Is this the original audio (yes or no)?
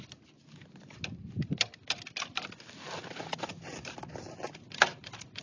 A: yes